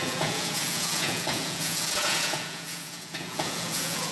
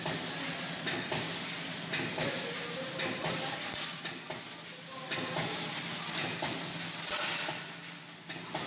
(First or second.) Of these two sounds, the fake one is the first